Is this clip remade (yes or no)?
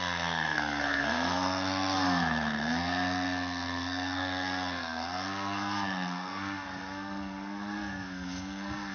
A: yes